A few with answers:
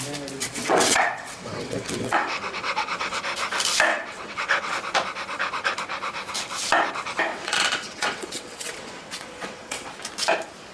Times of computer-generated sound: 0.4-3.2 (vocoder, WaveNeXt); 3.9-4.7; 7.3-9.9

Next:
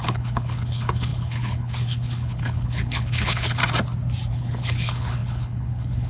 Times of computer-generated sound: 0.0-3.6 (codec, HILCodec); 4.3-6.1